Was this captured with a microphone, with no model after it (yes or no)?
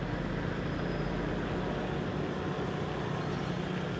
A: yes